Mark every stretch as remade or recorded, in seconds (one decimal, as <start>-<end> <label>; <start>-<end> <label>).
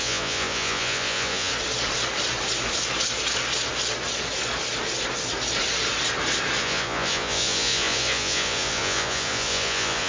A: 0.0-1.5 remade; 1.5-6.6 recorded; 6.6-10.1 remade